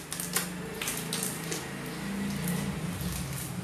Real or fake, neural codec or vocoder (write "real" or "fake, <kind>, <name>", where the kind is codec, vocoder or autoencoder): real